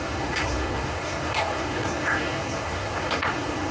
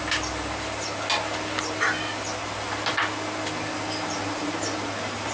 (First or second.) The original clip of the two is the second